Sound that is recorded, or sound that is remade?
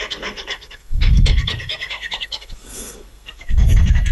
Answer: remade